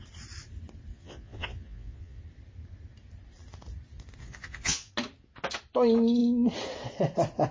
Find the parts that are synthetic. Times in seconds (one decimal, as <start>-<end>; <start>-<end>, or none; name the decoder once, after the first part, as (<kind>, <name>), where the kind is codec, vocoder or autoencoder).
0.9-2.2 (vocoder, Vocos); 4.2-4.9